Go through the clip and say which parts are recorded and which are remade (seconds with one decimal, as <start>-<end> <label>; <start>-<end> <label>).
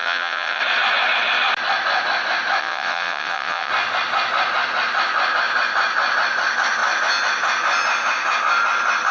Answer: 0.0-0.6 remade; 0.6-2.6 recorded; 2.6-3.7 remade; 3.7-9.1 recorded